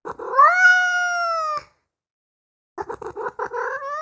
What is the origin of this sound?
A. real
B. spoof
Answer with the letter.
A